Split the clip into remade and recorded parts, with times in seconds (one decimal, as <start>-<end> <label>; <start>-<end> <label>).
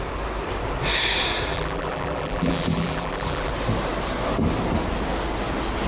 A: 0.0-1.5 recorded; 1.5-3.5 remade; 3.5-5.9 recorded